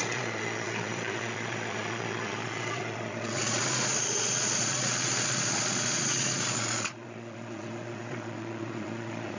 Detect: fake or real fake